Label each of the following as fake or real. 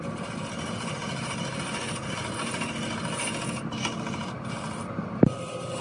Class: real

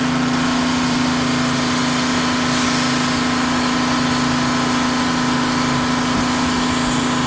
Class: real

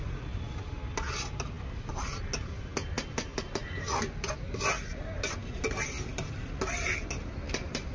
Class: real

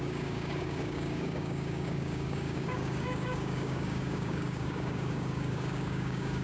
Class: fake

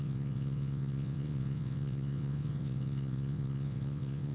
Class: fake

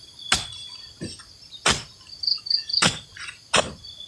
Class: real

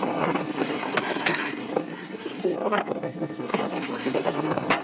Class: fake